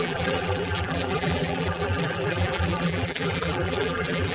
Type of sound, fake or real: fake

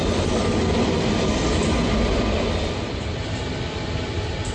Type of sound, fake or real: fake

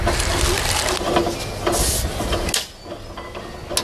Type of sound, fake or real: real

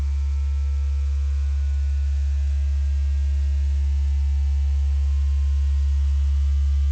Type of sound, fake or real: real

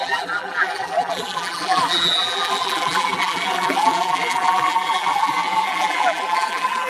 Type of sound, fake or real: fake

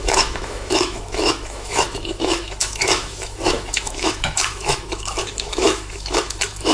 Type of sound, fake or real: fake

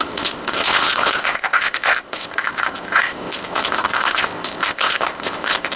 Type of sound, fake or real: fake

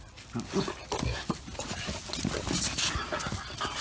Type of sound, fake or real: real